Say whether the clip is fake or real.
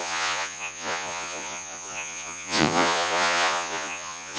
fake